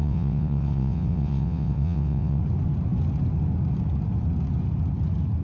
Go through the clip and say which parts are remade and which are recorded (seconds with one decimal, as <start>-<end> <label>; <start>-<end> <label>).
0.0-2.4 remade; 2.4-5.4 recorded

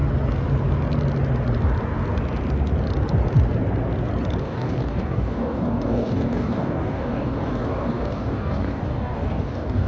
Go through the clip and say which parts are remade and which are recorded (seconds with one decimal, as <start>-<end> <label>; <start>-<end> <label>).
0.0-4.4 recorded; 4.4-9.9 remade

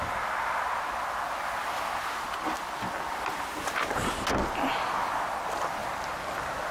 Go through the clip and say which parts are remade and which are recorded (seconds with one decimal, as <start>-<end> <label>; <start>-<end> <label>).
0.0-6.7 recorded